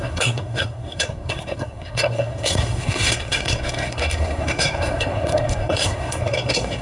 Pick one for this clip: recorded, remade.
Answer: remade